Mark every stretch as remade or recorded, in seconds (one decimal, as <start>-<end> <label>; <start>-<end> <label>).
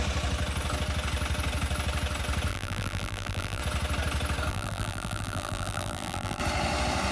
0.0-2.5 recorded; 2.5-3.6 remade; 3.6-4.5 recorded; 4.5-6.4 remade; 6.4-7.1 recorded